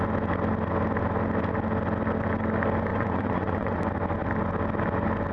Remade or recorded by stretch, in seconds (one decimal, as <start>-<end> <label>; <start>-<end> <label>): 0.0-2.9 recorded; 2.9-3.8 remade; 3.8-5.3 recorded